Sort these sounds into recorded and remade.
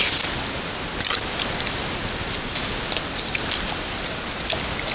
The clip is recorded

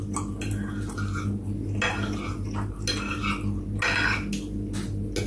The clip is recorded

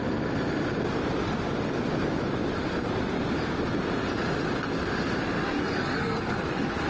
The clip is recorded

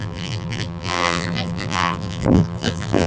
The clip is remade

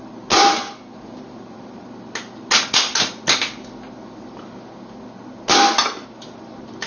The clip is recorded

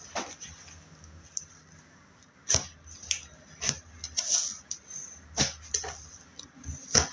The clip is recorded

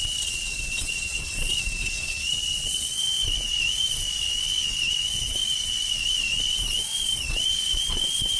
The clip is remade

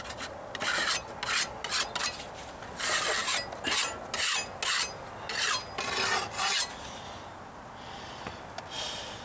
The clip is recorded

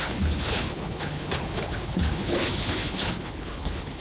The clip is remade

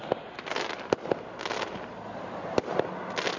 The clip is recorded